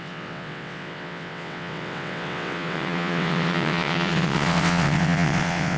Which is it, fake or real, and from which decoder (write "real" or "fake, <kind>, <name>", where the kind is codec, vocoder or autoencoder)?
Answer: fake, vocoder, WaveNeXt